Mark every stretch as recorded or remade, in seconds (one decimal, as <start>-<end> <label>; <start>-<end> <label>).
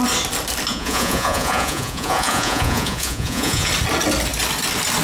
0.0-0.7 recorded; 0.7-3.7 remade; 3.7-5.0 recorded